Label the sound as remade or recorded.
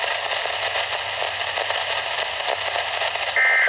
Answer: recorded